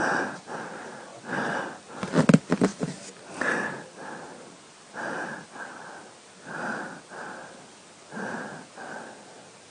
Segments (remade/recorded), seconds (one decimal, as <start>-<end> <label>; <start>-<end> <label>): 0.0-1.1 recorded; 1.1-1.6 remade; 1.6-9.7 recorded